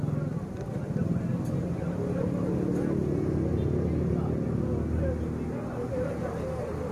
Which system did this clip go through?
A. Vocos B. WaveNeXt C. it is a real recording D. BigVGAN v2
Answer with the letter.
C